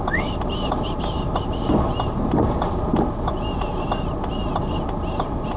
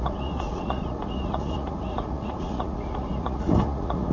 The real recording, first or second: first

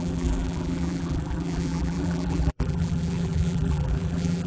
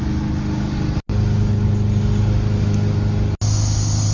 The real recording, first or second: second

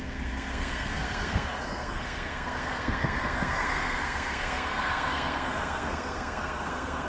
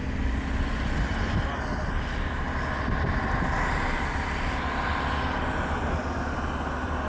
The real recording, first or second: second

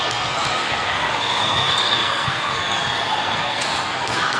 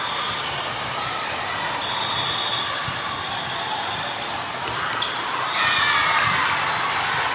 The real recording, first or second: second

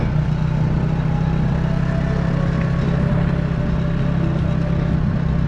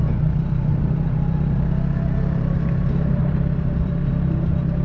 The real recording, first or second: first